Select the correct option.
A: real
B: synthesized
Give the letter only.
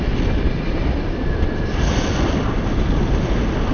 A